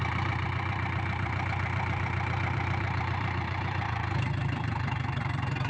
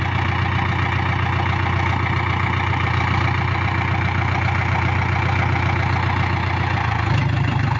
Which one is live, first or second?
second